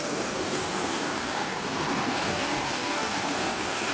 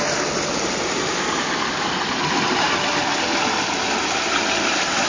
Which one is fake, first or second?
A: first